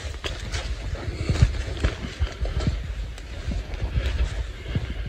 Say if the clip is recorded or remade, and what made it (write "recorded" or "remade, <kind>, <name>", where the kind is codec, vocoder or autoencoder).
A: recorded